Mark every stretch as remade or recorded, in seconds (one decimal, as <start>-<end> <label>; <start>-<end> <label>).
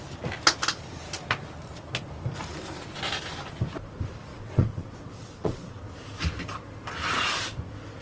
0.0-4.3 recorded; 4.3-5.8 remade; 5.8-8.0 recorded